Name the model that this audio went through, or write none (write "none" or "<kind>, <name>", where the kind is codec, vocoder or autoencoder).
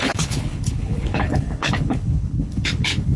codec, HILCodec